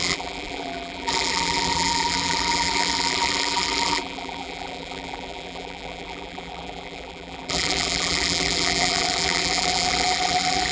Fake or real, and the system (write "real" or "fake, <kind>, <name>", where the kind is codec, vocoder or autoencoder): fake, vocoder, BigVGAN v2